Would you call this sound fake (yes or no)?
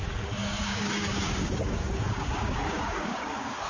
yes